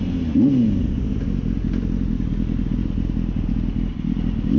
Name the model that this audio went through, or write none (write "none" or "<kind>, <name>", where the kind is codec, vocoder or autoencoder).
none